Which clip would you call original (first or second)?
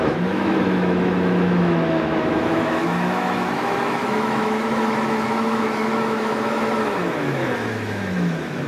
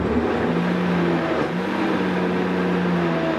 second